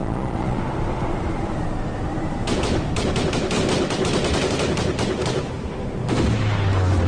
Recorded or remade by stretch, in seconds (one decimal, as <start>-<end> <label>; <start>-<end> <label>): 0.0-0.6 remade; 0.6-7.1 recorded